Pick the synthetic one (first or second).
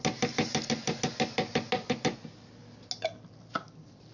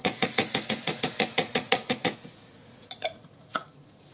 second